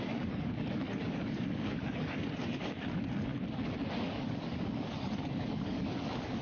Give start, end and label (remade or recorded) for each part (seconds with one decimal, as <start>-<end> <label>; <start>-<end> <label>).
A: 0.0-3.3 remade; 3.3-4.0 recorded; 4.0-6.4 remade